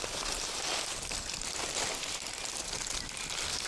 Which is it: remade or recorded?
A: recorded